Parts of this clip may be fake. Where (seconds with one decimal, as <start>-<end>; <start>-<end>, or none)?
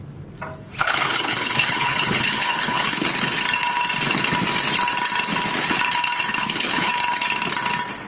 0.8-3.1; 6.3-6.9